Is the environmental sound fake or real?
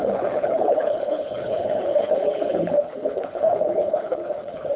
fake